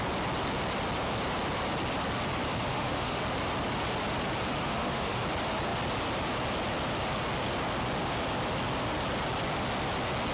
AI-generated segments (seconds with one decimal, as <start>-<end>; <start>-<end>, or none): 2.7-3.2; 4.5-5.2